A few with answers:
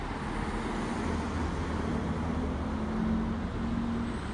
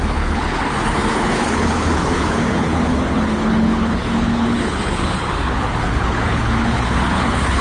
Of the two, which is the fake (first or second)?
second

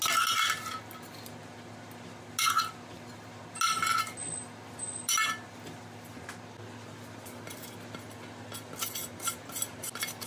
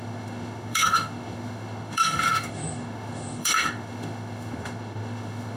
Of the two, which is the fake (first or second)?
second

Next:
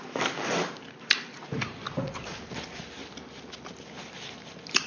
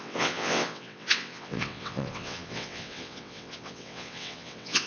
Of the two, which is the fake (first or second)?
second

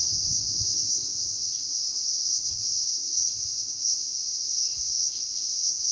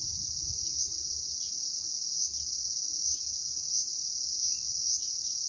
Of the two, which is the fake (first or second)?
first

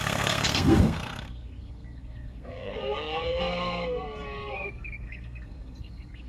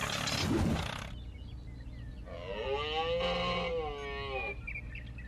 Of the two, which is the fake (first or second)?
first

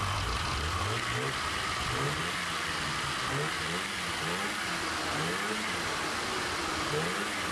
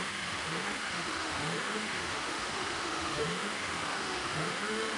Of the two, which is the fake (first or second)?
second